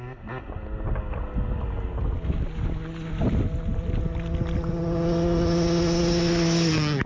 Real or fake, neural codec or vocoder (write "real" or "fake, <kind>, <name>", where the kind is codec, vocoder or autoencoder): real